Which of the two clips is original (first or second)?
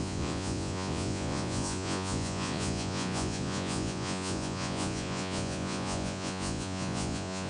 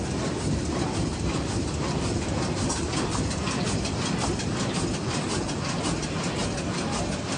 second